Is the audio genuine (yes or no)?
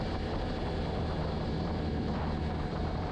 no